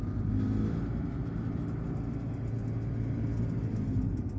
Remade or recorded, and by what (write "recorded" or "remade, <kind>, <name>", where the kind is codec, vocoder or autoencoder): recorded